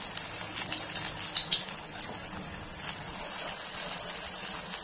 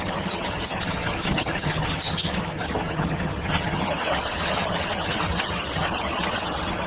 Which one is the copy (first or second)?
second